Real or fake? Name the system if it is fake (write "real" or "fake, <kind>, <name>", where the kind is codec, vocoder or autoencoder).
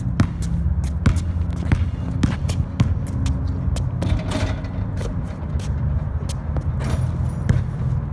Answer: real